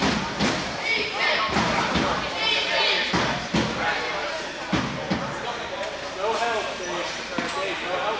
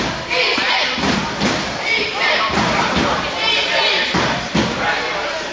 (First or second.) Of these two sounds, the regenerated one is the second